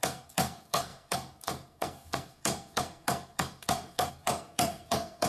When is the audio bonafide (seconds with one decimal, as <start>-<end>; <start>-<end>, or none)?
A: none